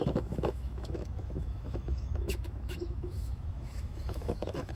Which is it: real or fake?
fake